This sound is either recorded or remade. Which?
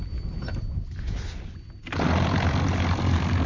recorded